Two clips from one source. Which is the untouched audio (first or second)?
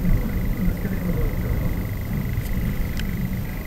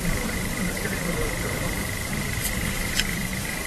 first